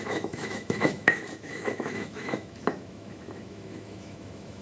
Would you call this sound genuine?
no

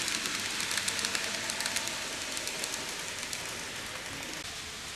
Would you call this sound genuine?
yes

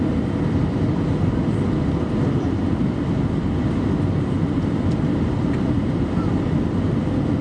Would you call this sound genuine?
yes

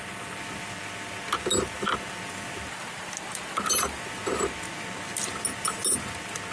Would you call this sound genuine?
yes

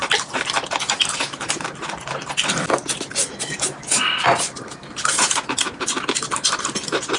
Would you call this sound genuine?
yes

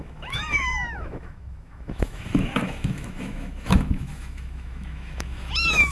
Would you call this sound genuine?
no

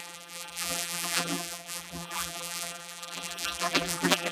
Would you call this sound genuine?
no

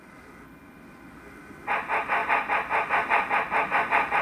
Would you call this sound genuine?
yes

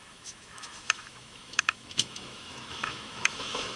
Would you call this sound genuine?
no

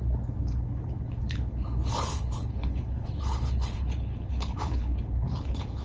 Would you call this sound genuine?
no